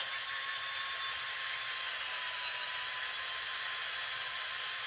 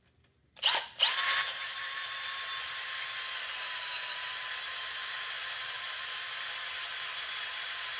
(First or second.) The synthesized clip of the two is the second